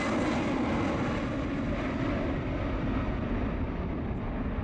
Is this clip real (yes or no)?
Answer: yes